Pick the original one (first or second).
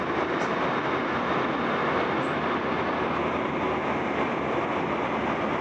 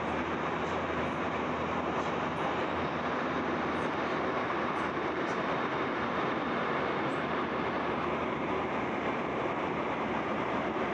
first